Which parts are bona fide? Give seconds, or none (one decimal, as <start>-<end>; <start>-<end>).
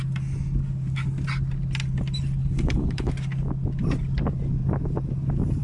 0.0-2.4; 3.1-5.6